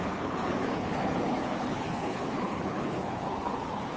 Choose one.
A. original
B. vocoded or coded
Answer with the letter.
B